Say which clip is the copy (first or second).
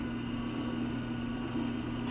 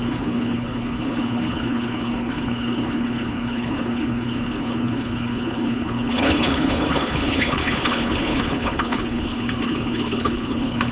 second